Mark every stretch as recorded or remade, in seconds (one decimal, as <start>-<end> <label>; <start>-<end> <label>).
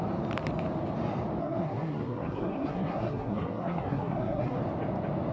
0.0-1.4 recorded; 1.4-4.6 remade; 4.6-5.3 recorded